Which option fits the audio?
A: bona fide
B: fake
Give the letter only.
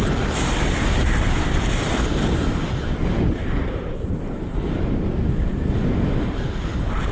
A